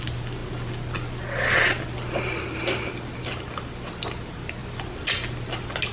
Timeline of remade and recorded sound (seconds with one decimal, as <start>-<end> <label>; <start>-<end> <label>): 0.0-5.9 recorded